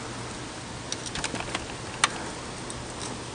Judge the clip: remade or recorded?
recorded